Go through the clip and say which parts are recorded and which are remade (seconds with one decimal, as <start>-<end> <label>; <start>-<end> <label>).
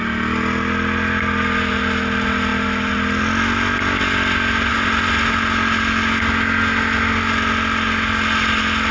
0.0-8.9 recorded